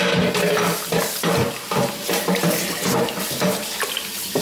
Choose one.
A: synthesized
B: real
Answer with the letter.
B